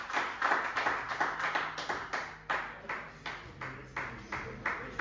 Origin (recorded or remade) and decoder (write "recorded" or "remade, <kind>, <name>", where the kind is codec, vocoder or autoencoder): remade, vocoder, BigVGAN v2